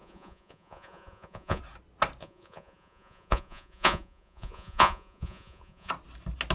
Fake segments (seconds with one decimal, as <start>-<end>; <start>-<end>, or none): 0.0-1.6; 2.2-5.9